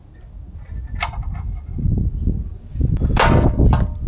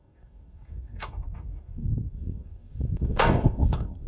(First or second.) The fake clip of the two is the second